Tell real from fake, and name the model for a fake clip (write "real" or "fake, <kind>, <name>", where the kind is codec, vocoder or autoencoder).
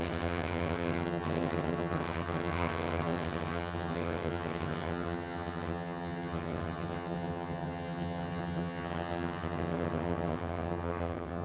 fake, vocoder, HiFi-GAN